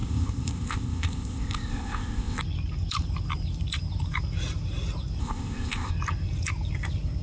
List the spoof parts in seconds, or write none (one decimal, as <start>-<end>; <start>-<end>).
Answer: 0.0-2.4; 5.2-5.9